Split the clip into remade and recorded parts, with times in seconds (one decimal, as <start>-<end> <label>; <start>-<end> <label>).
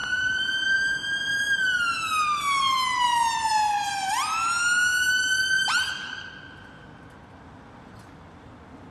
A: 0.0-1.8 remade; 1.8-3.5 recorded; 3.5-4.3 remade; 4.3-8.9 recorded